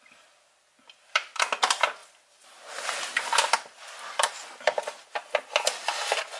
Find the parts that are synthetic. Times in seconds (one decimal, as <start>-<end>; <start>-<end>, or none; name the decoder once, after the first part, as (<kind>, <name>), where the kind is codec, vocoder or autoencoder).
none